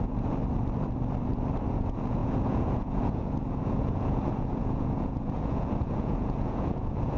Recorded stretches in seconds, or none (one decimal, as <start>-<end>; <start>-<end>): 0.4-1.7

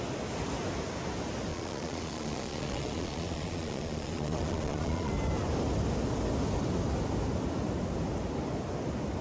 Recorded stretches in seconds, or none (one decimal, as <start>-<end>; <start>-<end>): 0.0-1.5; 5.1-9.2

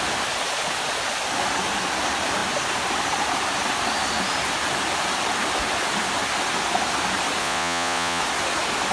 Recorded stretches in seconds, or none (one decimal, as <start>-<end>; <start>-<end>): 0.0-7.4; 8.2-8.9

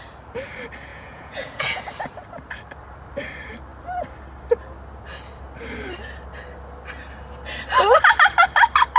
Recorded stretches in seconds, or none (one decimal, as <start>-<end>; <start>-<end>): 0.0-0.9; 1.8-9.0

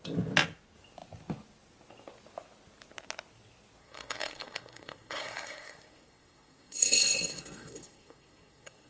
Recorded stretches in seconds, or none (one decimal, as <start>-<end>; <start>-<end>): 0.0-3.8